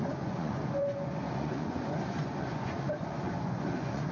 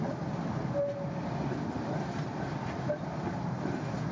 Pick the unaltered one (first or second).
second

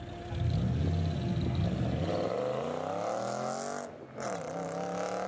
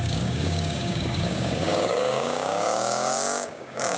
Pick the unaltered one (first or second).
first